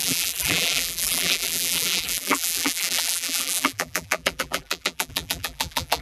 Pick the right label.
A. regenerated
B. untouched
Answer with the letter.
A